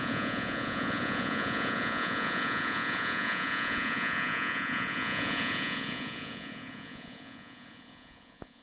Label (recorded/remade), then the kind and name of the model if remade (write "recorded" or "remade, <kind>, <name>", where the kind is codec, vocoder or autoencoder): remade, vocoder, Vocos